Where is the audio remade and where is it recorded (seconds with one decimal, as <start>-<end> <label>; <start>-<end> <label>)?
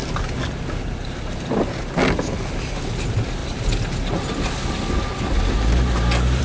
0.0-6.4 recorded